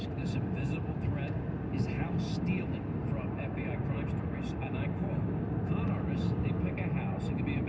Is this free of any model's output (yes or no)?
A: yes